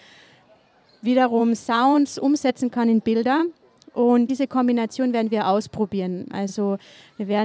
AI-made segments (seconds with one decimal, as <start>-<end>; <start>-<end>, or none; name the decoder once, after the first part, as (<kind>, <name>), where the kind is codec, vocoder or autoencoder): 0.6-2.5 (vocoder, Vocos)